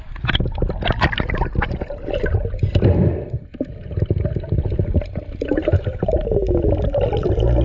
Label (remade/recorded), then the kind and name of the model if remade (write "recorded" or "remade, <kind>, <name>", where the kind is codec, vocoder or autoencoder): recorded